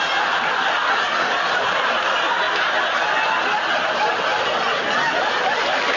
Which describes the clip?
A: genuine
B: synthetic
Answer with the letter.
A